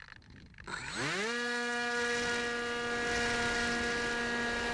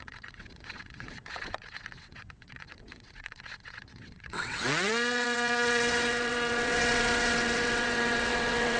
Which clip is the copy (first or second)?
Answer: second